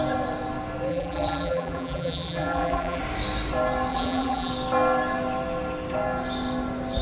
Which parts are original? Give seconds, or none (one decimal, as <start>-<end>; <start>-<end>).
0.0-0.9; 3.0-3.9; 4.5-7.0